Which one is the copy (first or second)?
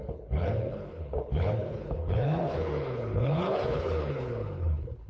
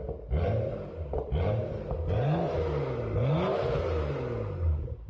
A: first